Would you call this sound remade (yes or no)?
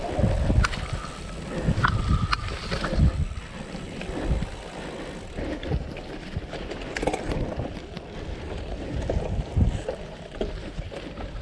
no